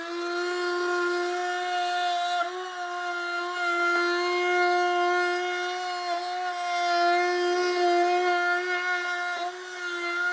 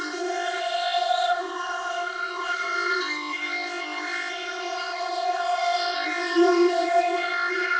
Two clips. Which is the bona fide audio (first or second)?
first